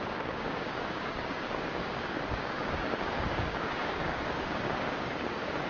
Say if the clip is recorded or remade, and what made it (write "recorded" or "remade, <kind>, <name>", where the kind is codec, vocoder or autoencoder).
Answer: remade, codec, DAC